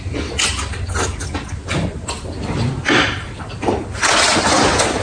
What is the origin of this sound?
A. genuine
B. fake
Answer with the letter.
A